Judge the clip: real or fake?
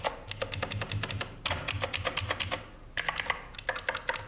real